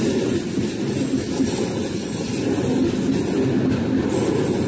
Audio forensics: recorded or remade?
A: recorded